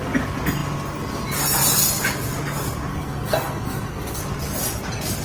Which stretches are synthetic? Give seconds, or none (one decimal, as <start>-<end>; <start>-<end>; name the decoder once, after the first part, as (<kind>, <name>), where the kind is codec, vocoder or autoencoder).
2.9-4.2 (codec, SNAC)